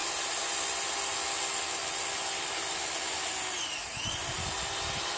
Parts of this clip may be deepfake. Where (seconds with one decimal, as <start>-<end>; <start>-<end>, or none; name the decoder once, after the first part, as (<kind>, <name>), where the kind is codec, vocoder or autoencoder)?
none